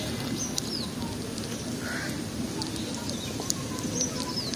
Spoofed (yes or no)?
no